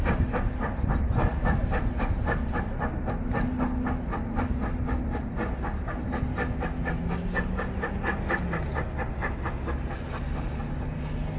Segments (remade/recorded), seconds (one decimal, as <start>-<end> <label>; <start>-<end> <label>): 0.0-11.4 recorded